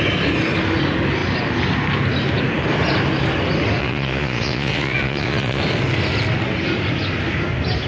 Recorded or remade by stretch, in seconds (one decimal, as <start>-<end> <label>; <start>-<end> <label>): 0.0-3.8 recorded; 3.8-5.6 remade; 5.6-7.9 recorded